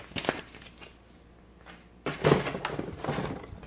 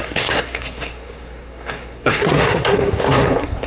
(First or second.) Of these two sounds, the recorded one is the first